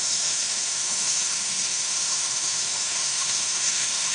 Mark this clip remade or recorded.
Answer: remade